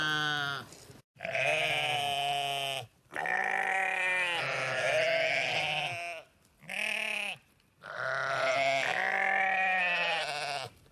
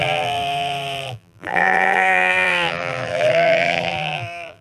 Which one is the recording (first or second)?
first